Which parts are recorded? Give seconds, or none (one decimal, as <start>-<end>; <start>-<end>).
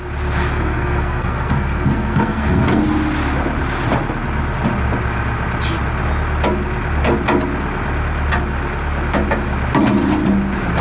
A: 0.0-0.4; 2.8-10.8